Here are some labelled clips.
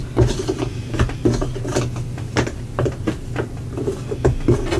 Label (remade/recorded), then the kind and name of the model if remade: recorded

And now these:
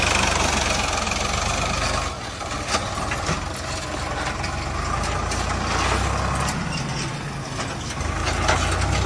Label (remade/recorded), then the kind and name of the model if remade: recorded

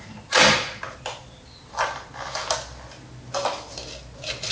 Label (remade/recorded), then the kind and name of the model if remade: recorded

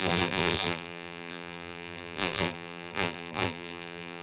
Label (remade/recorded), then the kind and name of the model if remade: remade, vocoder, BigVGAN v2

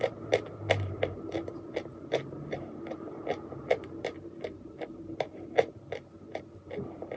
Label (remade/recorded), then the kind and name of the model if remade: recorded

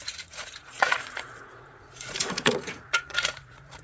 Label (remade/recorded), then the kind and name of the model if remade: remade, vocoder, Vocos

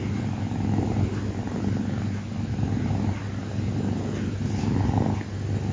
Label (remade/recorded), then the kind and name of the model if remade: recorded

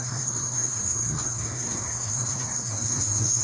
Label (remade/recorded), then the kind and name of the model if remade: remade, codec, SNAC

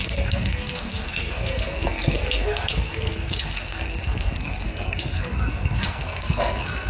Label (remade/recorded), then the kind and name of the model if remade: remade, codec, SNAC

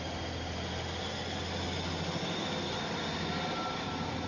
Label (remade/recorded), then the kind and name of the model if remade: recorded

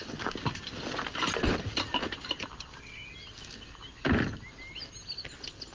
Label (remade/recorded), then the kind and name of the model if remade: recorded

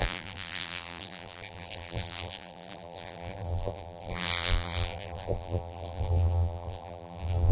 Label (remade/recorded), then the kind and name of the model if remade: remade, vocoder, BigVGAN v2